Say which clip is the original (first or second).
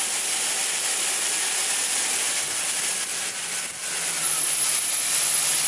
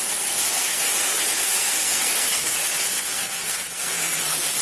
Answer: first